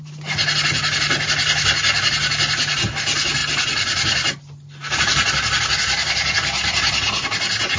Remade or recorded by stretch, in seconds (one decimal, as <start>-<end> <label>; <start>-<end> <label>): 0.0-7.8 recorded